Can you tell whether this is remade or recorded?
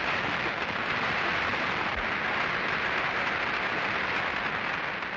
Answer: recorded